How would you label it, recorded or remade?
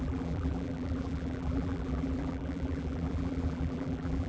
remade